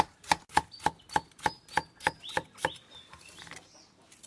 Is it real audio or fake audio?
real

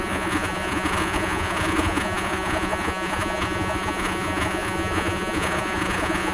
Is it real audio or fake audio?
fake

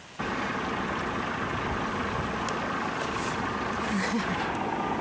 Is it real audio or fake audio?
real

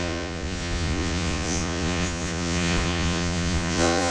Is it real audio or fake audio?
fake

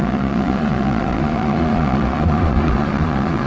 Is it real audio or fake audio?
fake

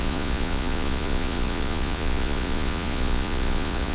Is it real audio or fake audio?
fake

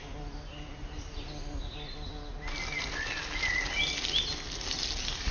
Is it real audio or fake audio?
real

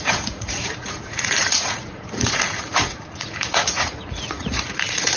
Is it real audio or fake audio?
fake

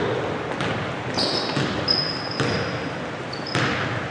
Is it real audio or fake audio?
real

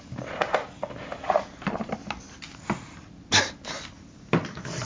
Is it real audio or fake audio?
real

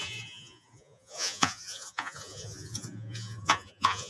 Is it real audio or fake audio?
fake